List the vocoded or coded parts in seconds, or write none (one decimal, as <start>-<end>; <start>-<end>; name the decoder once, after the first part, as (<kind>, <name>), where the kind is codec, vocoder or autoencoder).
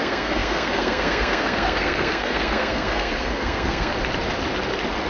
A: 0.0-3.9 (codec, SNAC)